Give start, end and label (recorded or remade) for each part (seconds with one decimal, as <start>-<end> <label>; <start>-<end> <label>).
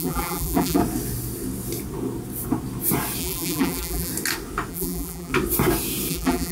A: 0.0-0.8 remade; 0.8-3.2 recorded; 3.2-4.1 remade; 4.1-4.7 recorded; 4.7-5.3 remade; 5.3-6.1 recorded; 6.1-6.5 remade